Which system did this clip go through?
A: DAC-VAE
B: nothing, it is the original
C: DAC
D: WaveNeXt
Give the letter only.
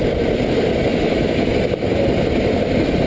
B